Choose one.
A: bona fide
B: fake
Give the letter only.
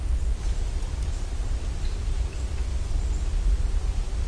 A